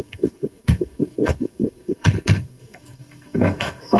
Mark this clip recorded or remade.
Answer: remade